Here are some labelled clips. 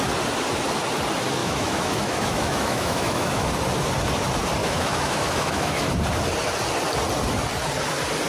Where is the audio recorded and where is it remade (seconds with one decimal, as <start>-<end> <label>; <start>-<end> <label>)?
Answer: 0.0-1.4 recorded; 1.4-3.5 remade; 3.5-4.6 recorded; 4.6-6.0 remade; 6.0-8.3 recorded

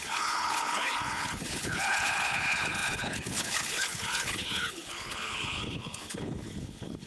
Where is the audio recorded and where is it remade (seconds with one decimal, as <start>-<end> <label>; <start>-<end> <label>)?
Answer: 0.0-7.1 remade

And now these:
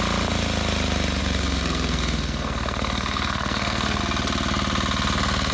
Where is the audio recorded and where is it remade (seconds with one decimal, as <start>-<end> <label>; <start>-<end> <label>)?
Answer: 0.0-1.2 recorded; 1.2-4.0 remade; 4.0-5.5 recorded